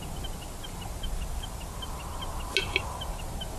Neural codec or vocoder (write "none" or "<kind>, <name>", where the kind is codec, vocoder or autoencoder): none